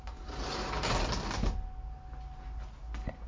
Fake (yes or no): no